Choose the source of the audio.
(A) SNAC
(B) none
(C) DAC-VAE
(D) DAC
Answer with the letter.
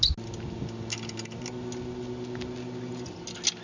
B